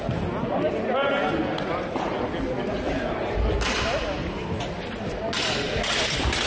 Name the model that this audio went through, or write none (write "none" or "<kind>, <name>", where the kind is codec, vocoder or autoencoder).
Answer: none